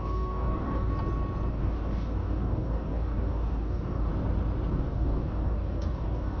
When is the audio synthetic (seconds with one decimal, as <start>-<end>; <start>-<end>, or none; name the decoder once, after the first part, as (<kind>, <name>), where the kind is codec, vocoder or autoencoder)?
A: 0.0-0.9 (codec, DAC); 1.5-4.1; 4.7-6.4